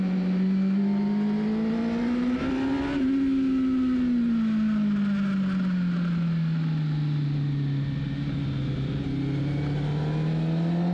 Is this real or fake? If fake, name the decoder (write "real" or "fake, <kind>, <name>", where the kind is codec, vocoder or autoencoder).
real